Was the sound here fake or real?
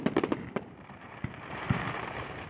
fake